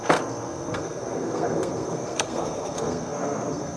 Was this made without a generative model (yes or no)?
no